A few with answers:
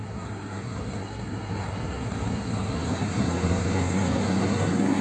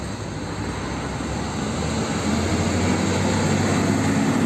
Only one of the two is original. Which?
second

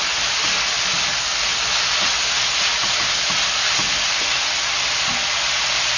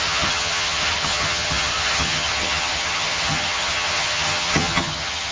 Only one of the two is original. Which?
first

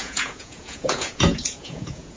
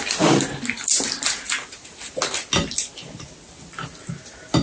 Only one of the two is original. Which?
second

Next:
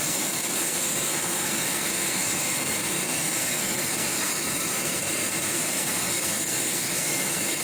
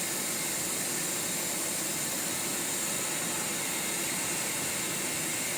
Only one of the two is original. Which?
second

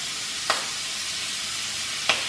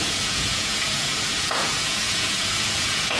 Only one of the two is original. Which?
first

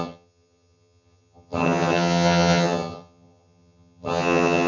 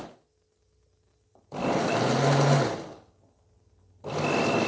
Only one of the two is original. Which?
second